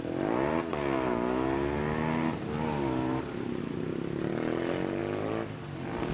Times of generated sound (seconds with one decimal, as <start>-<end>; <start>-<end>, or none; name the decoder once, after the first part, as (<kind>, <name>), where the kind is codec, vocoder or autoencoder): none